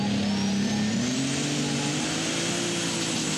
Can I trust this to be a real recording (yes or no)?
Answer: yes